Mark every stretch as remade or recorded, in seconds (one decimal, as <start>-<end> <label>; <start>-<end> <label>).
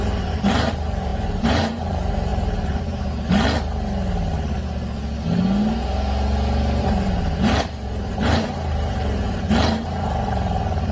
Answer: 0.0-2.3 remade; 2.3-6.8 recorded; 6.8-10.9 remade